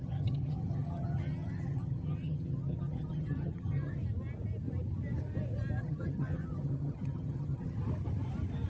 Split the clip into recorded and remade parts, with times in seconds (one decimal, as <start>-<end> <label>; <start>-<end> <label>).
0.0-4.0 remade; 4.0-5.8 recorded; 5.8-7.8 remade; 7.8-8.7 recorded